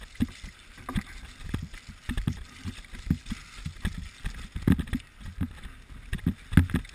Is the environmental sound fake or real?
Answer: real